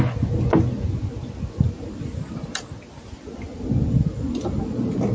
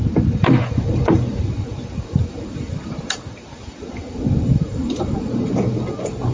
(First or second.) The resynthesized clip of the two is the second